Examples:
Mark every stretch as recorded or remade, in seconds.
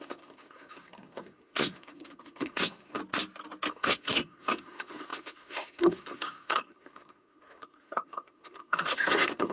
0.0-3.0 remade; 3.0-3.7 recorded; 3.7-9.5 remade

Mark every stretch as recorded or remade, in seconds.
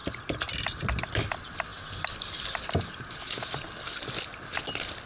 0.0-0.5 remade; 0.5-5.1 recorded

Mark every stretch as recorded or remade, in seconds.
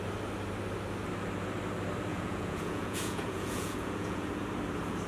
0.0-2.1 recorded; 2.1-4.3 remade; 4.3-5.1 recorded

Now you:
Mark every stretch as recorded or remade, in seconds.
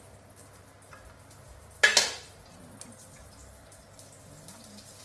0.0-5.0 recorded